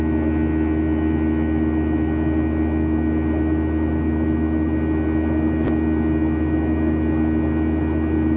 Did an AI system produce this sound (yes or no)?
no